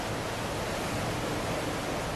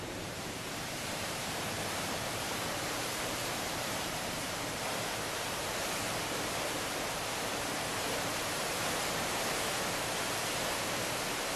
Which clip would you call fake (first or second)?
second